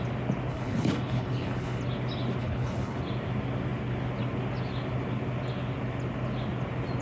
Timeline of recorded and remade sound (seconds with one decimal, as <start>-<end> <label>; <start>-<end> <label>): 0.0-0.5 recorded; 0.5-1.8 remade; 1.8-2.4 recorded; 2.4-3.0 remade; 3.0-7.0 recorded